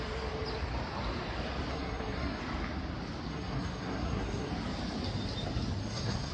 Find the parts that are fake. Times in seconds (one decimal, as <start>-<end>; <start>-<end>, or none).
1.7-2.4; 3.3-4.5; 5.8-6.3